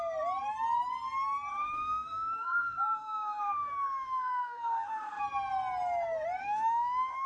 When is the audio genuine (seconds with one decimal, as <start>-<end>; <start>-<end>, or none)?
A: 0.0-1.5; 5.2-6.4